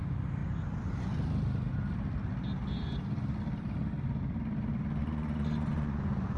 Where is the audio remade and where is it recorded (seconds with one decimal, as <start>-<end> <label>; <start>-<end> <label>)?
0.0-5.0 recorded; 5.0-6.4 remade